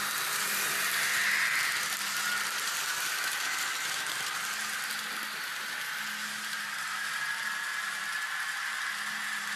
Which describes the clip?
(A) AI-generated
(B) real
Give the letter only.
B